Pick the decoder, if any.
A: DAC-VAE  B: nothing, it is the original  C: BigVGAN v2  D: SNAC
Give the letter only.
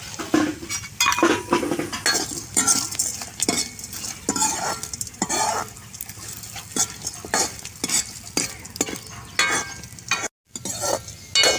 B